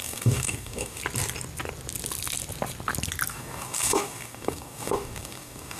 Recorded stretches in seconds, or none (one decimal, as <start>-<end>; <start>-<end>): 1.0-3.3